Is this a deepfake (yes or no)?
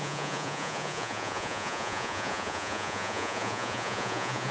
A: yes